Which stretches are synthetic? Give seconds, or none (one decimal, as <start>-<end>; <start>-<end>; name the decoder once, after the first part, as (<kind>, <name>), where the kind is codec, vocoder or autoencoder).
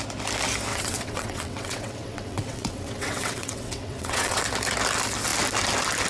0.7-4.4 (vocoder, WaveNeXt)